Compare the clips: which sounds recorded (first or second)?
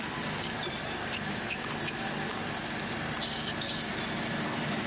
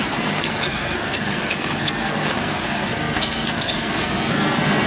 first